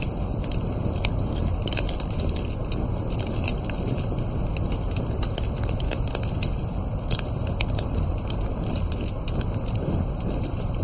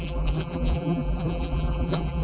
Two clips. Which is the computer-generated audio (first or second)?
second